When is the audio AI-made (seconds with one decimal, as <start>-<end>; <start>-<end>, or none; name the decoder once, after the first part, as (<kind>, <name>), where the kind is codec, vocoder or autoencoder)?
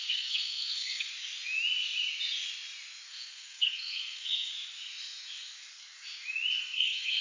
0.0-1.1 (codec, SNAC); 3.1-4.5; 6.6-7.2